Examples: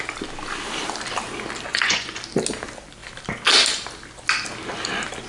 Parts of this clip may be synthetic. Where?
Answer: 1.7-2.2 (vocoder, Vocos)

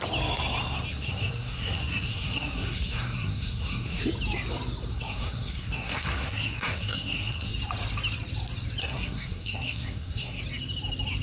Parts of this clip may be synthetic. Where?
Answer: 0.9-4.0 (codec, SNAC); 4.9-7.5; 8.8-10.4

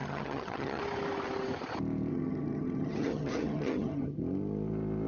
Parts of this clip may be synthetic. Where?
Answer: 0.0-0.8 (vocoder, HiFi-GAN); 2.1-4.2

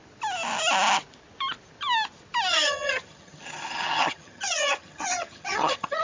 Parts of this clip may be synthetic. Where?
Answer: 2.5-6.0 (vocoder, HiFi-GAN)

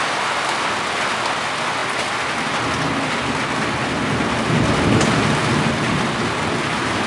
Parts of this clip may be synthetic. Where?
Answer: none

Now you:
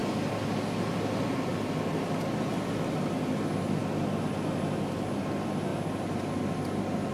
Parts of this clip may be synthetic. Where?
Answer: none